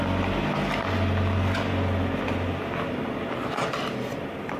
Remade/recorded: recorded